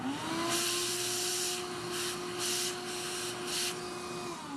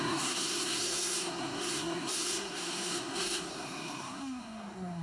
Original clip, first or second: first